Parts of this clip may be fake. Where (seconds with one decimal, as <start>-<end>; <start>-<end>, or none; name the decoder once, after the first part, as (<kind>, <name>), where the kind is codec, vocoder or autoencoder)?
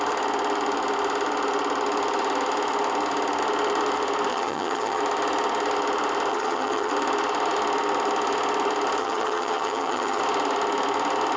4.3-5.0 (vocoder, HiFi-GAN); 6.3-6.9; 9.0-10.2